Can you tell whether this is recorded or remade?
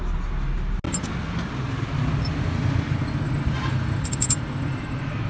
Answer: recorded